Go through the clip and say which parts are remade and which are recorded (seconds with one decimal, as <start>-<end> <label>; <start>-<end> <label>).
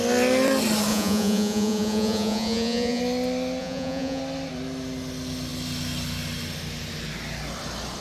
0.0-0.9 recorded; 0.9-3.0 remade; 3.0-3.6 recorded; 3.6-4.2 remade; 4.2-8.0 recorded